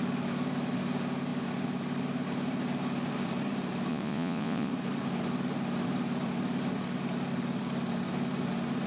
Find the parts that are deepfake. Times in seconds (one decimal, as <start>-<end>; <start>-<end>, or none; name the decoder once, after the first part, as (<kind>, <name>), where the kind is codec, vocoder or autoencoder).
3.9-4.7 (vocoder, Vocos)